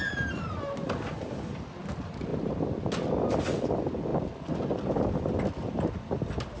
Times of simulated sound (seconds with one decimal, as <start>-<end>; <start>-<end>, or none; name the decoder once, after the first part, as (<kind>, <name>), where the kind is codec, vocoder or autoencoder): none